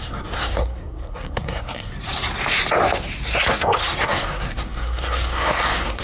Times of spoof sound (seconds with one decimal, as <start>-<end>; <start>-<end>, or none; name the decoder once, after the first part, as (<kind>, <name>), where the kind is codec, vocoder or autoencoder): 0.0-1.9 (codec, SNAC); 3.5-6.0